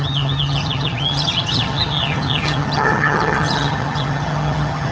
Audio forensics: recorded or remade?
remade